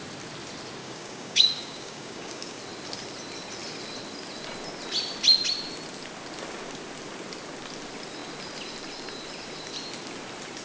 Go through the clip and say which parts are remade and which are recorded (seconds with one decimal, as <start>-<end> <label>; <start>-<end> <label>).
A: 0.0-0.8 recorded; 0.8-2.6 remade; 2.6-10.6 recorded